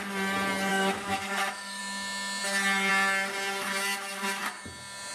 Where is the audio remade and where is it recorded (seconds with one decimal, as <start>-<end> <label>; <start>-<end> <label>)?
0.0-0.7 recorded; 0.7-1.8 remade; 1.8-5.1 recorded